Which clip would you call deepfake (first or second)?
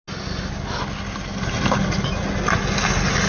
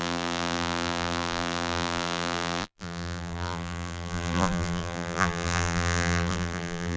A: second